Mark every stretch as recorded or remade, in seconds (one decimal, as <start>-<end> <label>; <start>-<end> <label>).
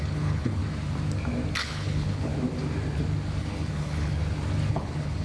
0.0-0.6 remade; 0.6-1.6 recorded; 1.6-2.3 remade; 2.3-3.4 recorded; 3.4-4.2 remade; 4.2-4.7 recorded; 4.7-5.2 remade